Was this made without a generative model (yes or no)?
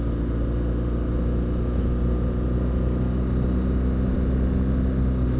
yes